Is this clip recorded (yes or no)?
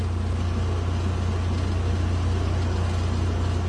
yes